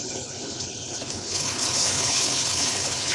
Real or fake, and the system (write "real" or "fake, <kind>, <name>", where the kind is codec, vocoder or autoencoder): fake, codec, HILCodec